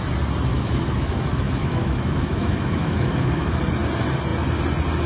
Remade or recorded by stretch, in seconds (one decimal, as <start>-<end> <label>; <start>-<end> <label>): 0.0-0.5 recorded; 0.5-3.6 remade; 3.6-5.1 recorded